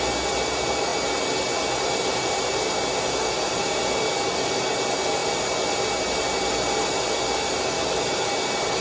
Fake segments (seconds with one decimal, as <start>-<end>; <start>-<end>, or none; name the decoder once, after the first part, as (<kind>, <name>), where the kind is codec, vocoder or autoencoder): none